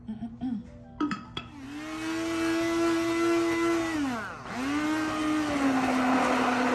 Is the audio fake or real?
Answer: real